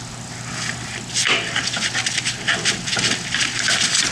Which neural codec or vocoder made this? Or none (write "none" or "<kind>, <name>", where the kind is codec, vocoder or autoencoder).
none